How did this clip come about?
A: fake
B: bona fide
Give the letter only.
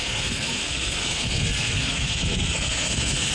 A